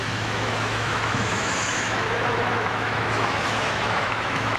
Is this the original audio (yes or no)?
no